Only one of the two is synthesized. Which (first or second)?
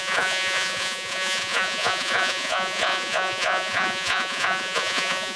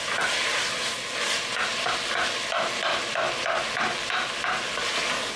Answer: first